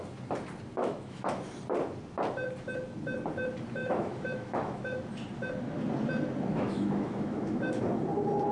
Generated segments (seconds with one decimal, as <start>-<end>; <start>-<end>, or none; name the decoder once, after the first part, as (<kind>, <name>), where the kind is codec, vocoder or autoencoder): 0.8-1.4 (autoencoder, DAC-VAE); 3.8-5.0; 6.5-7.8